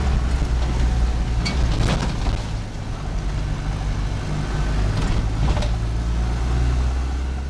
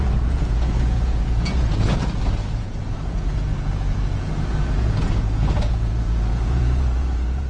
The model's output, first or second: second